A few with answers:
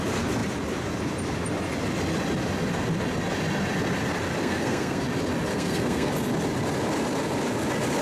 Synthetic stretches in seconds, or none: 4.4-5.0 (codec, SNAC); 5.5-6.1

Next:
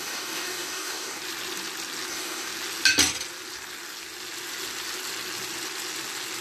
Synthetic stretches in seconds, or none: 0.0-1.2 (codec, DAC); 2.1-2.5

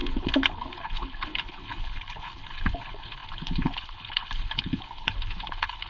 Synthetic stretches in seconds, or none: 0.0-5.9 (codec, HILCodec)

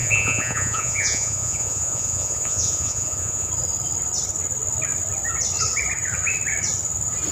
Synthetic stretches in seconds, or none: 0.0-3.5 (vocoder, Vocos)

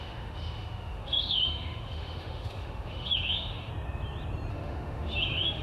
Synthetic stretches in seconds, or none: 0.0-3.7 (autoencoder, DAC-VAE); 4.5-5.6

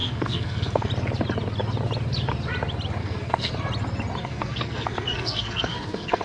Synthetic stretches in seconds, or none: 0.0-0.9 (codec, SNAC); 3.0-3.5; 4.2-6.2

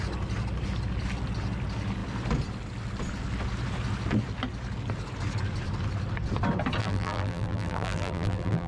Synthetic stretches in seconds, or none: 6.8-8.7 (vocoder, BigVGAN v2)